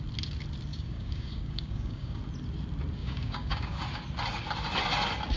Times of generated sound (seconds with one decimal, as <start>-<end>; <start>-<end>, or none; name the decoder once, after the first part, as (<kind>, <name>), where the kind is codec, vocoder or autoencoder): 0.7-2.2 (codec, DAC); 3.0-3.8